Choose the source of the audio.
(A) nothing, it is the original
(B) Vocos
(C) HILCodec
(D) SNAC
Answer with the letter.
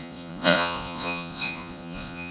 B